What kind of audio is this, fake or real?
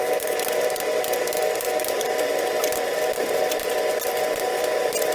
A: real